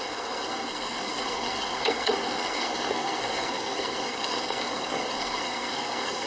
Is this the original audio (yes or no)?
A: no